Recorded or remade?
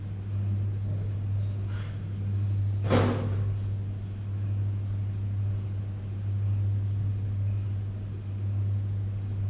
recorded